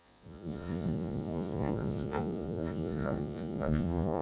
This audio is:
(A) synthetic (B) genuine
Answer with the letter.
A